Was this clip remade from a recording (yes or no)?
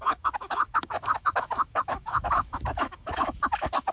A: yes